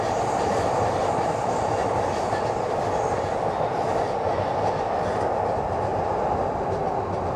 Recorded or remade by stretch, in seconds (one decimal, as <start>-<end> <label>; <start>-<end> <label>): 0.0-7.4 recorded